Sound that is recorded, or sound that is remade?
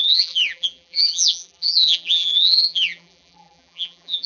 remade